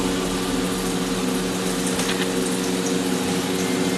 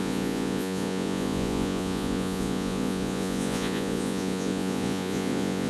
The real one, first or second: first